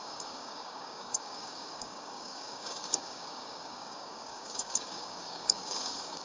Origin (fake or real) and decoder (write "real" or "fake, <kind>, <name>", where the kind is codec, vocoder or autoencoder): fake, codec, DAC